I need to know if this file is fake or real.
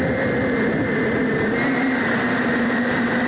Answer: fake